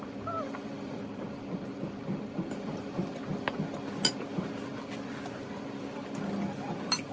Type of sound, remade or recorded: recorded